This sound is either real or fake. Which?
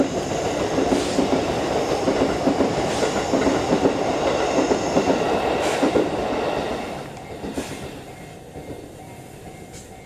real